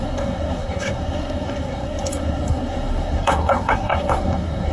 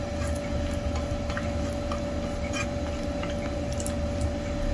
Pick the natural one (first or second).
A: second